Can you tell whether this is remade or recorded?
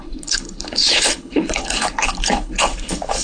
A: remade